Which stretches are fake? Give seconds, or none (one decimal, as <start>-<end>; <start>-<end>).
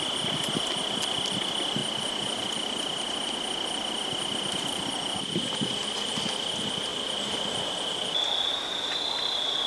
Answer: none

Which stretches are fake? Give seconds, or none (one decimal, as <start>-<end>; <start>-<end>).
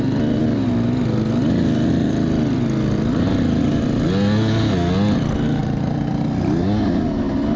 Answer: none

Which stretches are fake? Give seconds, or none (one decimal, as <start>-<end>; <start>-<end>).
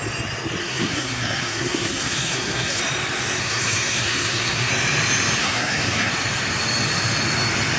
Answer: 0.6-2.8; 3.4-4.7; 5.4-6.1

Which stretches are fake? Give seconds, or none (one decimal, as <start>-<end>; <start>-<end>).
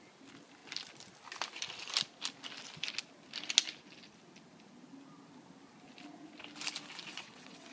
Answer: 7.1-7.7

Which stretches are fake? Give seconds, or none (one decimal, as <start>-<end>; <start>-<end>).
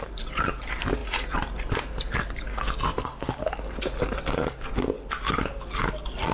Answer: none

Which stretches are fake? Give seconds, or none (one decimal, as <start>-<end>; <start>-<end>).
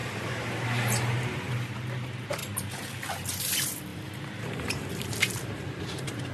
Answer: 0.0-1.5; 3.9-6.3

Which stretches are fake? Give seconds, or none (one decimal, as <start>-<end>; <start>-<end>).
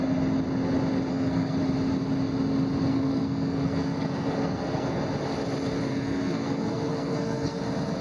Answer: 1.1-1.6; 2.9-5.0; 5.9-7.6